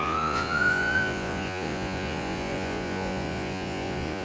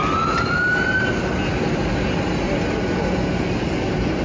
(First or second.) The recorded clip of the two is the second